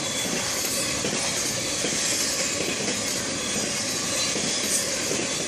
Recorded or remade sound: recorded